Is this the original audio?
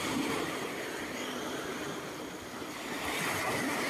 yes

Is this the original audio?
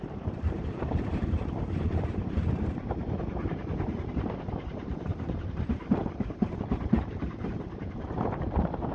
no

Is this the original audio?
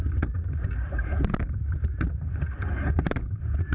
no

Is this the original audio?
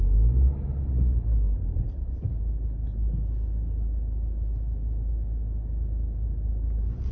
yes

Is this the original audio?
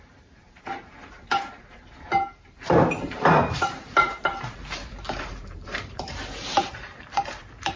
no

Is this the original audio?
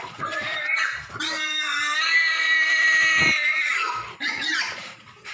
no